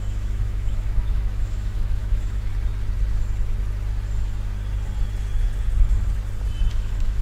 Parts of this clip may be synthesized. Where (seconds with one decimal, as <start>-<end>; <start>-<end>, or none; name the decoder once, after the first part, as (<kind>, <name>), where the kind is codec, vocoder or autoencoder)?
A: 0.0-2.5 (autoencoder, DAC-VAE); 6.7-7.2